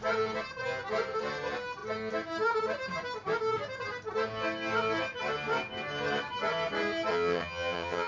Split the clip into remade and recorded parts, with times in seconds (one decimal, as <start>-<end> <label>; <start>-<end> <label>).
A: 0.0-7.1 recorded; 7.1-8.1 remade